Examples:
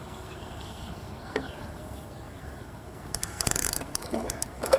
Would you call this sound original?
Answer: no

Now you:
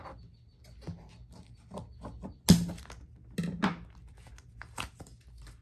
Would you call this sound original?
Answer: yes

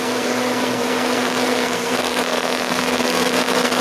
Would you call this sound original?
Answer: no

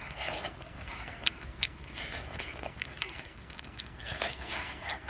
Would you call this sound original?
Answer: no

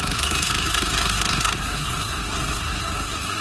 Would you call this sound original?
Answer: no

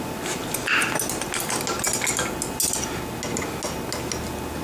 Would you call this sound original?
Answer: yes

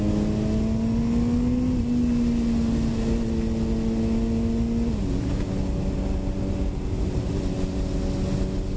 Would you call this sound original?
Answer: yes